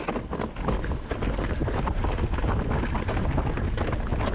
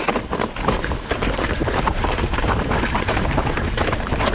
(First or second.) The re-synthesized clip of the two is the second